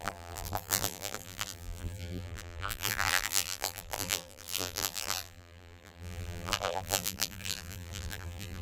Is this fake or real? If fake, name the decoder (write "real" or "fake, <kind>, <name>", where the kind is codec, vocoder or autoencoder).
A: fake, vocoder, BigVGAN v2